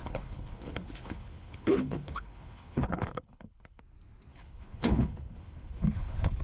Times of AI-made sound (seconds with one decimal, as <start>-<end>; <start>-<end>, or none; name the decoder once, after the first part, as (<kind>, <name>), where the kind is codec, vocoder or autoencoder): 0.0-3.8 (codec, HILCodec); 4.3-6.4